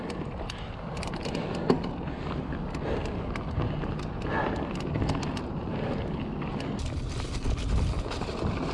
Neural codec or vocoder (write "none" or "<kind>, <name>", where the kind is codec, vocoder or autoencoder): none